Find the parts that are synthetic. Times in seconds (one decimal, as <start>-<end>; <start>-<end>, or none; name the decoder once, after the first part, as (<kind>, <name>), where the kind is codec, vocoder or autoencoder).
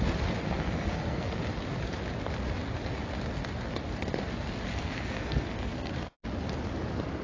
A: 0.4-1.4 (codec, SNAC); 4.7-5.9